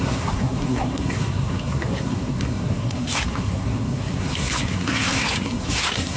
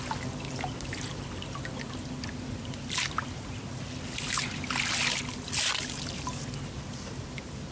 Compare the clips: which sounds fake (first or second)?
first